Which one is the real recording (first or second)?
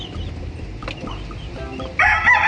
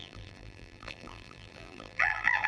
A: first